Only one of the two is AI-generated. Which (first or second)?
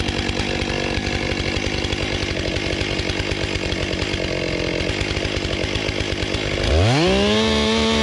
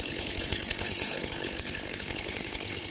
second